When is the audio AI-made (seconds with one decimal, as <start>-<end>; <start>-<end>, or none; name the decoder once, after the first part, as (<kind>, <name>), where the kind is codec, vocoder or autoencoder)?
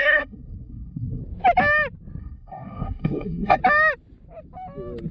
0.0-1.2 (codec, SNAC); 2.2-3.6